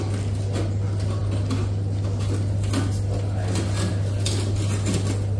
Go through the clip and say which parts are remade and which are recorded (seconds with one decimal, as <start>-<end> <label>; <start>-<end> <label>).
0.0-5.4 recorded